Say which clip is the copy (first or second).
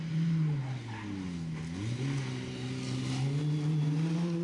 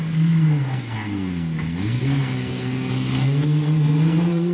second